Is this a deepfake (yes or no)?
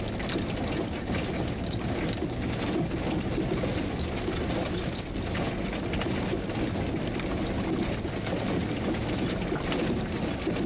no